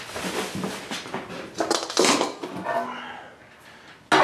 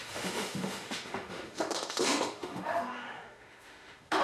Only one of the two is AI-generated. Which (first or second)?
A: second